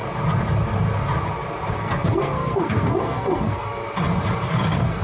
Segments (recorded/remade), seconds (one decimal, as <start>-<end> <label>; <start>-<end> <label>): 0.0-1.7 recorded; 1.7-3.8 remade; 3.8-4.5 recorded; 4.5-5.0 remade